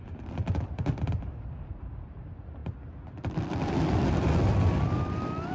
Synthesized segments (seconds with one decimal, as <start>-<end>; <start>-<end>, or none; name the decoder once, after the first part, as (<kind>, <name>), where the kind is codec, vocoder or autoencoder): none